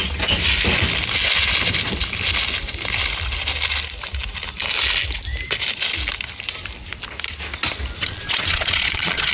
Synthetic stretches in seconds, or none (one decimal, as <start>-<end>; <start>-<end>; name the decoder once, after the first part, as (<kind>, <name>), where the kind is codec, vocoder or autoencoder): 8.0-9.3 (vocoder, Vocos)